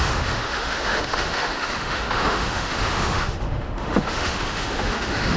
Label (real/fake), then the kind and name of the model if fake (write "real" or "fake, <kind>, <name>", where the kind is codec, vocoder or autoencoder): fake, autoencoder, DAC-VAE